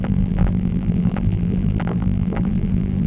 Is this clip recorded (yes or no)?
no